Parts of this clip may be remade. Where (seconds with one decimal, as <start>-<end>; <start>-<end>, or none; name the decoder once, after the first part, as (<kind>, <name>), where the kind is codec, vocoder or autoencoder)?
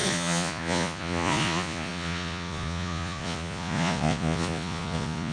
0.0-5.3 (vocoder, Vocos)